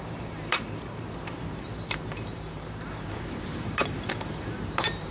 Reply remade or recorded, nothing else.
remade